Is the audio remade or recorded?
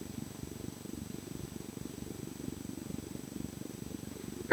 recorded